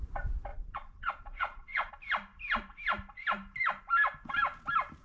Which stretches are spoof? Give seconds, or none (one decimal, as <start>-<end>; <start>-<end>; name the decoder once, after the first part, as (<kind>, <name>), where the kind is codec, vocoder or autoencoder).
0.5-1.9 (vocoder, Vocos)